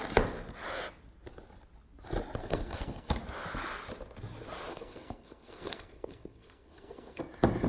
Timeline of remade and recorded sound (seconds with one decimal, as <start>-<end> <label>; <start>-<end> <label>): 0.0-2.4 recorded; 2.4-3.1 remade; 3.1-4.7 recorded; 4.7-7.2 remade; 7.2-7.7 recorded